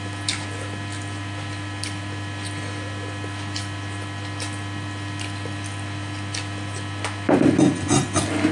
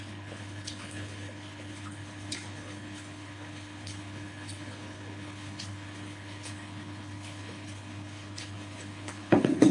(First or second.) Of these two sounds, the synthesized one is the second